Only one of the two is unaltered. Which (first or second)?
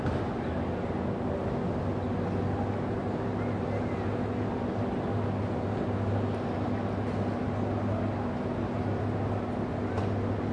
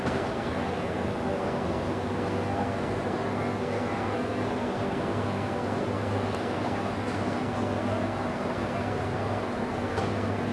first